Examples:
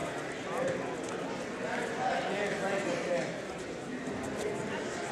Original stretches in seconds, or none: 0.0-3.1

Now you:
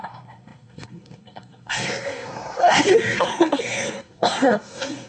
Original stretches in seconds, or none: none

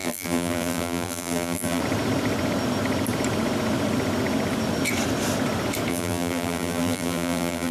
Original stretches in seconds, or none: 1.8-5.9

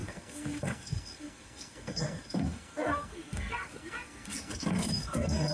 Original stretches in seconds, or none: none

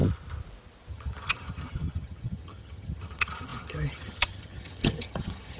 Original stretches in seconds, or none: 0.0-0.9